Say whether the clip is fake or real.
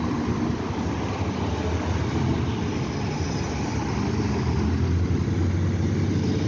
real